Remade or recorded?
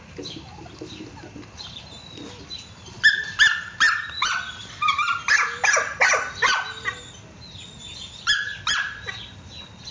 recorded